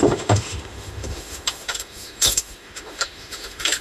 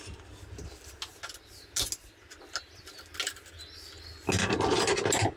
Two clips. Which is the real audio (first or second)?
second